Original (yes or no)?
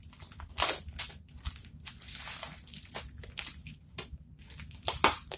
yes